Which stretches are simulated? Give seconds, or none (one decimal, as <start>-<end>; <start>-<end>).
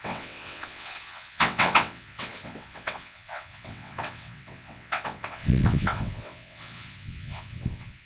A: 0.0-8.1